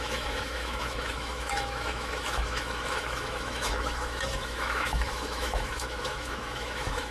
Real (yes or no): no